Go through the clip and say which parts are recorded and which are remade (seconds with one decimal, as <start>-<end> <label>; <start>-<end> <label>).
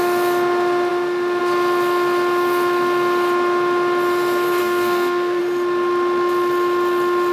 0.0-4.6 recorded; 4.6-5.4 remade; 5.4-7.3 recorded